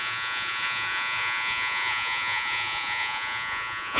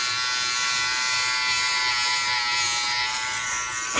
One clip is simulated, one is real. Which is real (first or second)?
second